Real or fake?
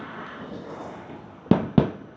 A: real